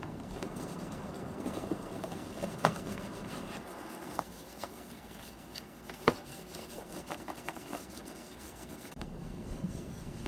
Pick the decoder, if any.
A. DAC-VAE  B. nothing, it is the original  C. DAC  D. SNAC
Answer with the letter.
D